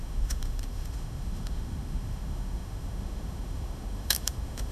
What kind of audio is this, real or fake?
fake